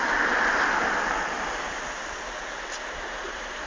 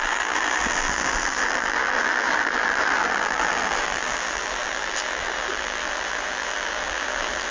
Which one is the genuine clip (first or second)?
first